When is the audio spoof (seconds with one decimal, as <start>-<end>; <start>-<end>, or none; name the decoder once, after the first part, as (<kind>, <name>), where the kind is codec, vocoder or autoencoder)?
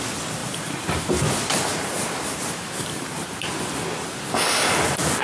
0.4-3.5 (vocoder, BigVGAN v2)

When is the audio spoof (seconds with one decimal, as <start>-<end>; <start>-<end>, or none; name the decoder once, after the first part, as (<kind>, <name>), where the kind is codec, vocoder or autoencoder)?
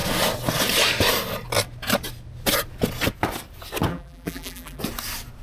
3.9-4.8 (vocoder, BigVGAN v2)